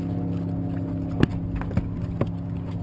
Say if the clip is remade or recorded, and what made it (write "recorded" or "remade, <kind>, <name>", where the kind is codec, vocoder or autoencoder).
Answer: recorded